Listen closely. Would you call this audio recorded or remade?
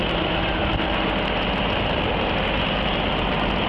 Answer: recorded